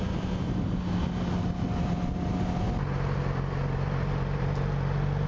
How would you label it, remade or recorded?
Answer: recorded